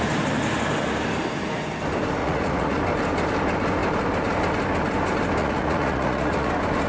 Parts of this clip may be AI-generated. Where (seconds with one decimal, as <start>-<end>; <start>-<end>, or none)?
2.2-2.8; 5.4-6.5